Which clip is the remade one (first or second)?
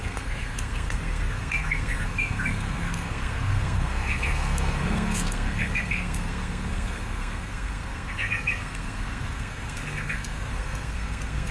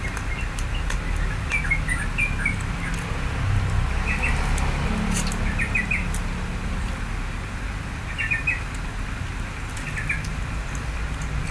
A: first